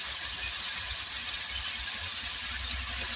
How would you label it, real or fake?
real